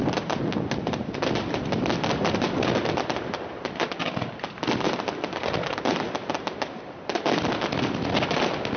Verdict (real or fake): real